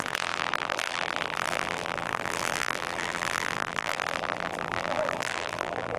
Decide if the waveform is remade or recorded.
remade